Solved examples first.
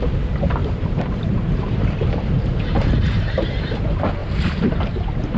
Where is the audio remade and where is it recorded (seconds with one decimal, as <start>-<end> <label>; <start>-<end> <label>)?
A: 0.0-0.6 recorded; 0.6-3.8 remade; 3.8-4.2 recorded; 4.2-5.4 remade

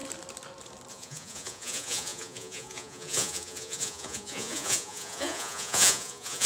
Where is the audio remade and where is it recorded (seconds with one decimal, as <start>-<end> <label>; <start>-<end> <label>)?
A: 0.0-0.9 recorded; 0.9-6.5 remade

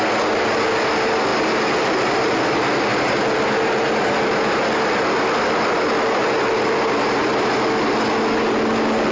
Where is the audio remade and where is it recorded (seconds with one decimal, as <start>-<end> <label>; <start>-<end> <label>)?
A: 0.0-2.9 recorded; 2.9-4.1 remade; 4.1-9.1 recorded

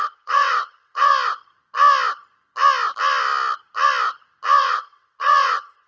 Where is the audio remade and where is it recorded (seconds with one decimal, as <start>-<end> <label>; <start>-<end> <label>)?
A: 0.0-1.1 remade; 1.1-4.6 recorded; 4.6-5.9 remade

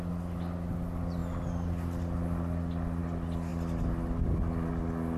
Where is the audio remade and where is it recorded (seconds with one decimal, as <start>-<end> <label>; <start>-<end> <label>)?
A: 0.0-5.2 recorded

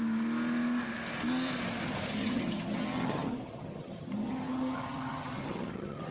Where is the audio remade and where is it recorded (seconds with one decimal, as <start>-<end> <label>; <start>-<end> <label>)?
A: 0.0-2.2 recorded; 2.2-6.1 remade

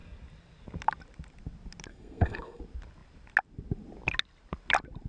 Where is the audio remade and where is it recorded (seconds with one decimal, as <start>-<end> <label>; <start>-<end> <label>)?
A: 0.0-1.9 recorded; 1.9-2.6 remade; 2.6-5.1 recorded

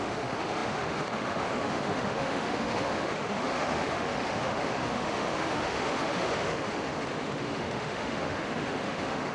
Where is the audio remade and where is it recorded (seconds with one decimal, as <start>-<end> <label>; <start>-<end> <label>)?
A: 0.0-9.3 remade